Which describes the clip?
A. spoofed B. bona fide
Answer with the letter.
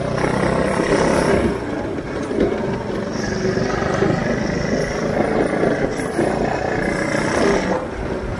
B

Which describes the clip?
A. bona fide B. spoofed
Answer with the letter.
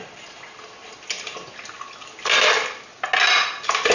A